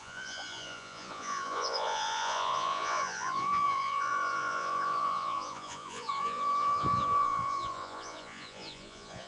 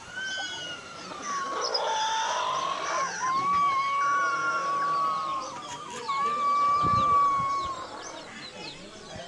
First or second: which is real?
second